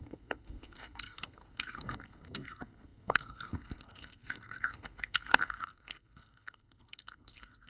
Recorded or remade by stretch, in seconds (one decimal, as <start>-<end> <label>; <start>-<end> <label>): 0.0-7.7 remade